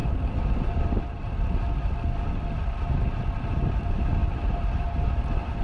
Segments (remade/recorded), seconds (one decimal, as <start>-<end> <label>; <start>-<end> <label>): 0.0-4.2 recorded; 4.2-5.6 remade